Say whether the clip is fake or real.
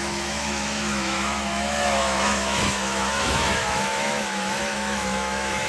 fake